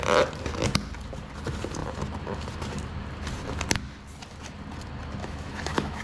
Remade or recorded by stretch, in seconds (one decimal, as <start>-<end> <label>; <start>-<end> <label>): 0.0-5.2 recorded; 5.2-6.0 remade